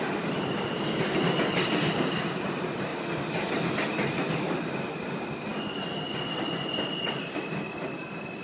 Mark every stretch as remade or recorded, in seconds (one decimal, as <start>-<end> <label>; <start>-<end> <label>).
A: 0.0-2.9 remade; 2.9-3.7 recorded; 3.7-5.5 remade; 5.5-7.9 recorded; 7.9-8.4 remade